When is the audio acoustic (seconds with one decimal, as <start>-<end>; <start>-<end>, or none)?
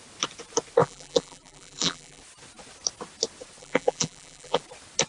0.0-0.8; 2.2-3.6; 4.6-5.1